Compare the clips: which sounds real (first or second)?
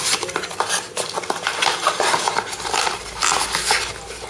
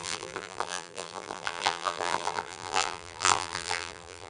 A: first